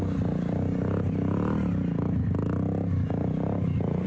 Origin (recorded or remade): recorded